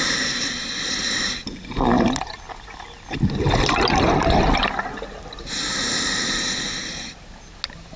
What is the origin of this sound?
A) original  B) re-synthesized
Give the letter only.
A